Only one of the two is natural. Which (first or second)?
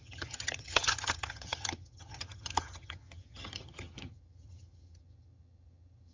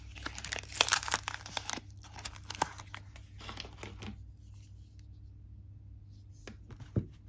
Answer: second